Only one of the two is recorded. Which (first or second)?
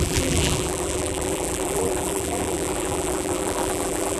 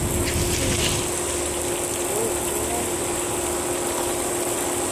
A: second